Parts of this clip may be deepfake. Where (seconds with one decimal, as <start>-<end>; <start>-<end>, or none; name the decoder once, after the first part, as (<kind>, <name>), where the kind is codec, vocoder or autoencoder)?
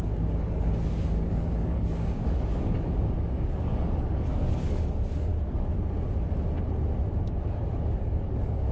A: 0.0-5.3 (codec, DAC); 8.0-8.7